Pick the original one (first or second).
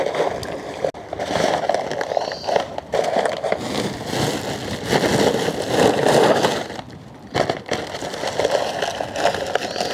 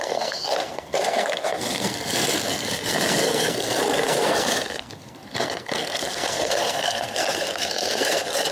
first